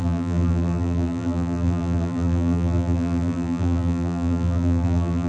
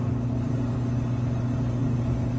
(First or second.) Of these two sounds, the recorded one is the second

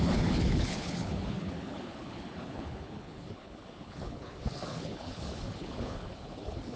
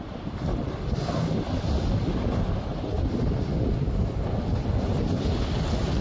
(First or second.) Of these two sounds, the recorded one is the second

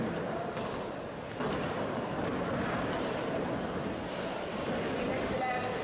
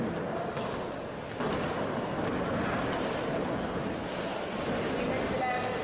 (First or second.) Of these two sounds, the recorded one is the second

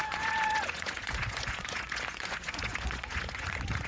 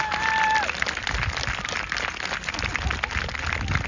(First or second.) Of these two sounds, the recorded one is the second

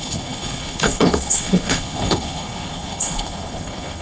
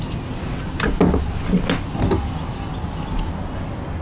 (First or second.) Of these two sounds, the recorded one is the second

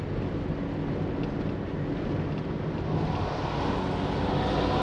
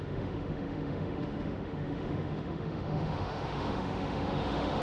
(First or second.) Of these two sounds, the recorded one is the first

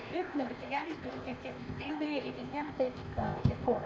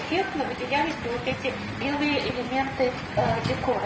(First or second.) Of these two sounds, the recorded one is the second